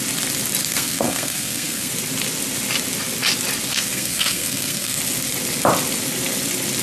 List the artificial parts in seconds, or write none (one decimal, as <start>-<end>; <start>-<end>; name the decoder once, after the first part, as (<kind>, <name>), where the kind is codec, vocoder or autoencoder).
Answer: 0.6-1.9 (codec, SNAC); 3.7-5.0